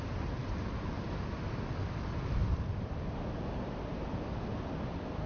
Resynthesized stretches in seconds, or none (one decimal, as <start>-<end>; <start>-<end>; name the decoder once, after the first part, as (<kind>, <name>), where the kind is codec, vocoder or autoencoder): none